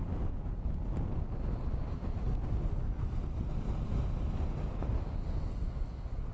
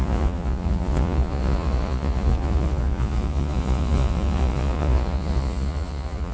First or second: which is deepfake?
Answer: second